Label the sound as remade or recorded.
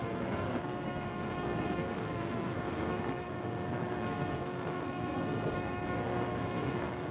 remade